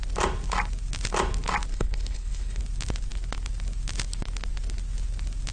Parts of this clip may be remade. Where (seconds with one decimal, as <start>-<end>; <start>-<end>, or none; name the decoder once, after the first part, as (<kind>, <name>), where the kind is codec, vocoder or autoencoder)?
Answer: 1.7-2.6 (codec, HILCodec)